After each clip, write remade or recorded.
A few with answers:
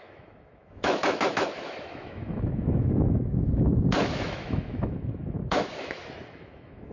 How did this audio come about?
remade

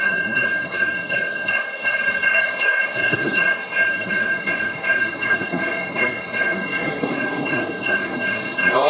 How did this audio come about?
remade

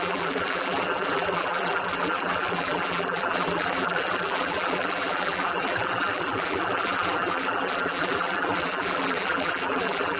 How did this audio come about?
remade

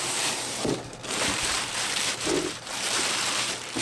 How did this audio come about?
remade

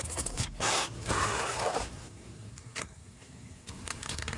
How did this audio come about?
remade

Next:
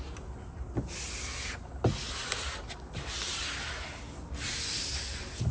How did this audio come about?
recorded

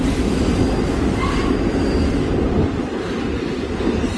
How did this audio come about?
recorded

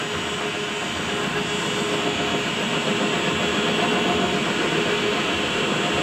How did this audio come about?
recorded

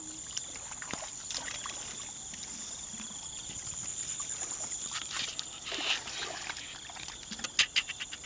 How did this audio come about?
recorded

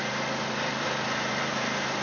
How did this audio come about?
remade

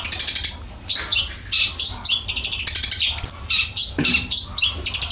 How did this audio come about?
recorded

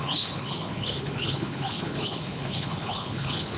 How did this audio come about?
remade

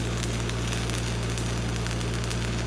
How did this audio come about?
recorded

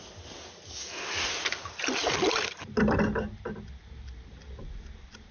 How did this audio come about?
recorded